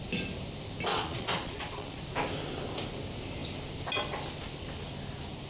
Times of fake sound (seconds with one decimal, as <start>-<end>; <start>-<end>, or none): 0.9-2.0

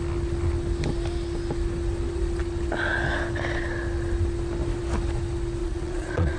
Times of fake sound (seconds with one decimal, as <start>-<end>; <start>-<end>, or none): 5.6-6.4